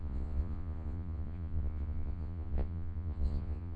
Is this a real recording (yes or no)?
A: no